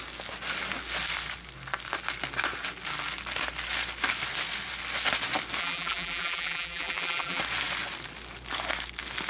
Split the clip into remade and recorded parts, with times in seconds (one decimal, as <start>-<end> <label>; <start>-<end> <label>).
0.0-5.6 recorded; 5.6-7.4 remade; 7.4-9.3 recorded